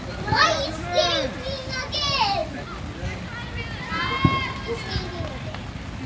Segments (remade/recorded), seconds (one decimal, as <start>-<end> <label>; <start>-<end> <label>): 0.0-6.1 recorded